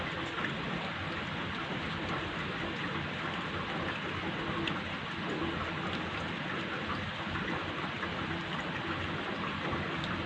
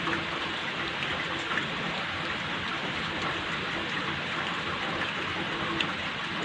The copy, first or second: second